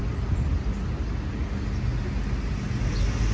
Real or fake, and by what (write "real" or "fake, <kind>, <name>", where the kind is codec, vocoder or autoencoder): real